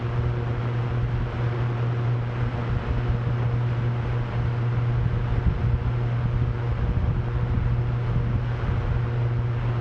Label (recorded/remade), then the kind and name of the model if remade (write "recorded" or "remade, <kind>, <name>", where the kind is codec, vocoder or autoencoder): recorded